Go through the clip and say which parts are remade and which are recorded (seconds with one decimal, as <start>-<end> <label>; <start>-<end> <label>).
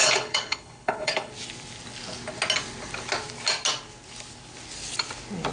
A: 0.0-1.3 remade; 1.3-5.5 recorded